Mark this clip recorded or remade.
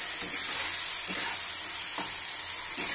recorded